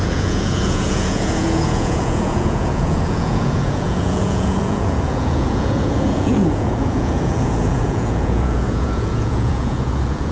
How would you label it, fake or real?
fake